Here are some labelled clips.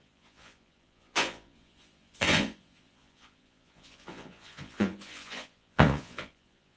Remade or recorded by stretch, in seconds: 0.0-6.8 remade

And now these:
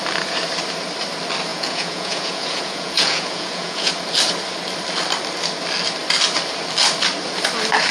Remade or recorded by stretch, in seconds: 0.0-1.5 recorded; 1.5-3.9 remade; 3.9-7.9 recorded

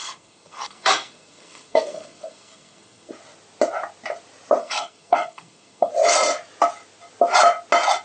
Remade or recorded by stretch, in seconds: 0.0-3.1 remade; 3.1-4.6 recorded; 4.6-5.9 remade; 5.9-8.0 recorded

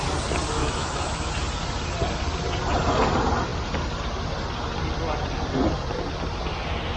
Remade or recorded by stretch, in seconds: 0.0-0.6 recorded; 0.6-1.3 remade; 1.3-7.0 recorded

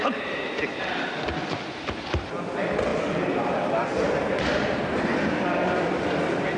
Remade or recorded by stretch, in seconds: 0.0-2.9 recorded; 2.9-5.8 remade; 5.8-6.6 recorded

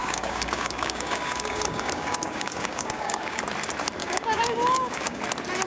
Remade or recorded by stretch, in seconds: 0.0-3.4 remade; 3.4-4.0 recorded; 4.0-5.2 remade; 5.2-5.7 recorded

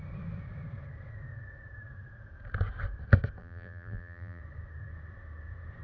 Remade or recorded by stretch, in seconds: 0.0-3.4 recorded; 3.4-4.4 remade; 4.4-5.8 recorded